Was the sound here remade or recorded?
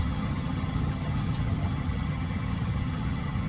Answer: remade